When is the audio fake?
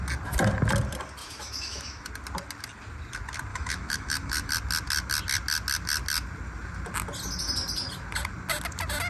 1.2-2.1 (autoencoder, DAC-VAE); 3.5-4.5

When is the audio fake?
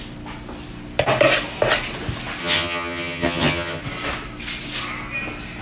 2.4-3.8 (vocoder, HiFi-GAN)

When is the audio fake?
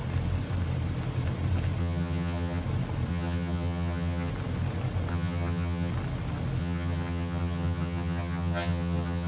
1.8-2.6 (vocoder, HiFi-GAN); 3.1-4.3; 5.1-5.9; 6.6-9.3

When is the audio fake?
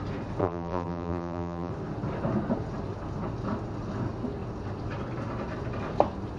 0.4-1.7 (vocoder, BigVGAN v2)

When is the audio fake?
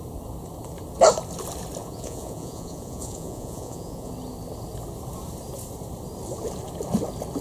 1.8-4.1 (vocoder, Vocos)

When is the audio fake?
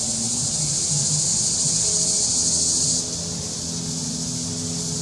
none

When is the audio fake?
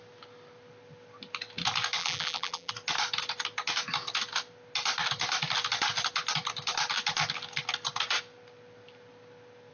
2.0-2.7 (vocoder, BigVGAN v2)